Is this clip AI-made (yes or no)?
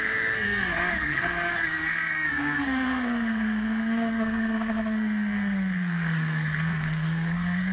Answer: yes